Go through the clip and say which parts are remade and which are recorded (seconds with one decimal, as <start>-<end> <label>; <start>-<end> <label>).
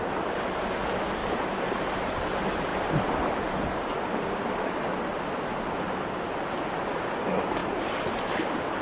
0.0-1.2 recorded; 1.2-1.9 remade; 1.9-8.8 recorded